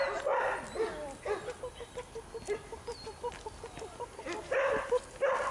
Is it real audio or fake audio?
real